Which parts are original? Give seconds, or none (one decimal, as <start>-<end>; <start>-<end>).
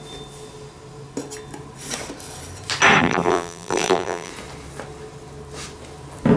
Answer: 0.0-3.0; 4.3-6.4